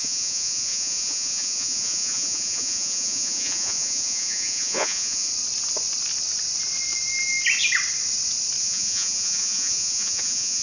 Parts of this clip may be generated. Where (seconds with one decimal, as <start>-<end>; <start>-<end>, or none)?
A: 0.0-5.3; 8.6-10.6